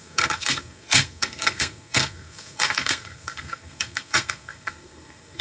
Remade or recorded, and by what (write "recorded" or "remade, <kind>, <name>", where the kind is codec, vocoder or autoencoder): remade, codec, SNAC